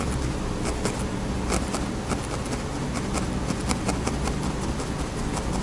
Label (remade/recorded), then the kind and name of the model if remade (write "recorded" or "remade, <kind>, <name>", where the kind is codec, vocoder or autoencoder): recorded